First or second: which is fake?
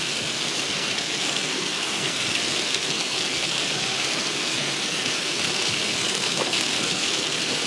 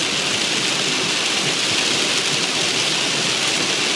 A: first